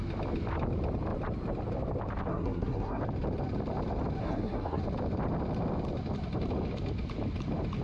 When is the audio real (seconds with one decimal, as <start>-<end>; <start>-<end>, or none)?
0.0-2.3; 3.0-4.2; 4.8-7.8